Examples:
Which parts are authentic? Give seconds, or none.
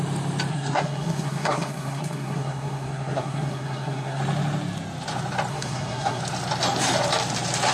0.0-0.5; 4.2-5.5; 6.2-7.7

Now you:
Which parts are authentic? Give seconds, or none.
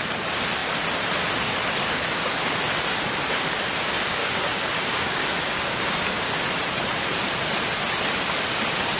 0.0-4.2; 6.4-9.0